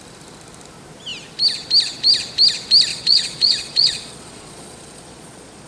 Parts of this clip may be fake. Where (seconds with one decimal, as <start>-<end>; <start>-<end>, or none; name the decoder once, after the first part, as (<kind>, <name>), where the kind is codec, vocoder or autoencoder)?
2.9-5.7 (vocoder, Vocos)